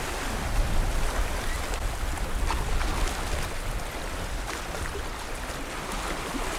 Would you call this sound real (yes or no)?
yes